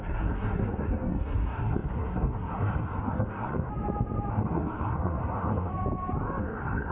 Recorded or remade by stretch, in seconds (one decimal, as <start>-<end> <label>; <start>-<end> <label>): 0.0-3.7 remade; 3.7-4.3 recorded; 4.3-5.7 remade; 5.7-6.4 recorded; 6.4-6.9 remade